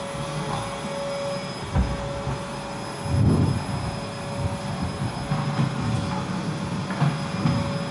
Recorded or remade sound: recorded